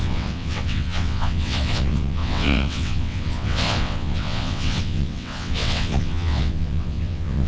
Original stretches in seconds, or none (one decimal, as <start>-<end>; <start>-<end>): none